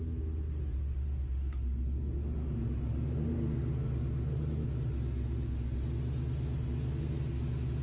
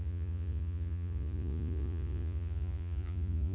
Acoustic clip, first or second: first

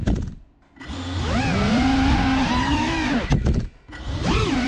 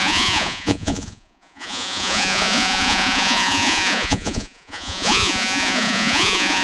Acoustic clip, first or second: first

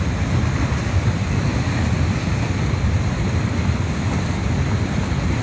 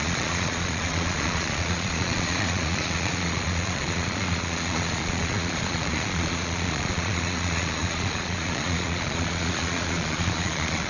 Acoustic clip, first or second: first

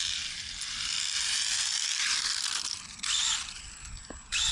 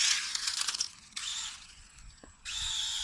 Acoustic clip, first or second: first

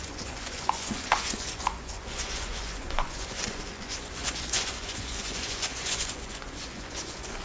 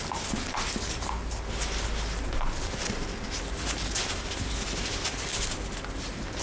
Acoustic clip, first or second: second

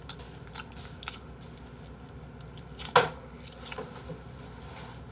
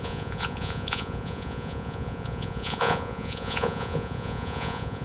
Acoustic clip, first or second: first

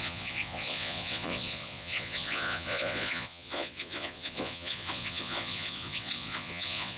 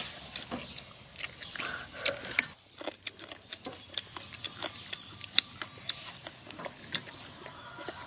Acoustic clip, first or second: second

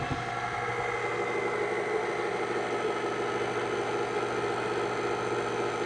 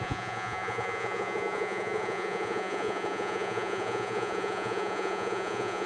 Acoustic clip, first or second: first